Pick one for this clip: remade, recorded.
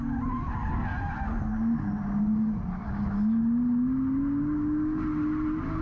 recorded